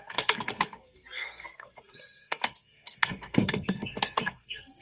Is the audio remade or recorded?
remade